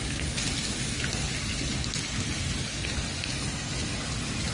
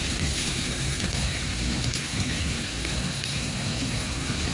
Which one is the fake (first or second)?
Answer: second